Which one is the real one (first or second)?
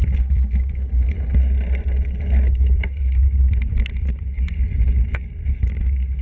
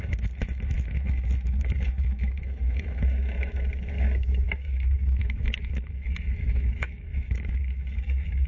first